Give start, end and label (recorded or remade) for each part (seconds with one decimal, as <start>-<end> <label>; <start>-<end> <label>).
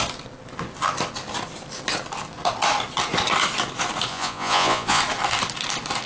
0.0-4.1 recorded; 4.1-5.0 remade; 5.0-6.1 recorded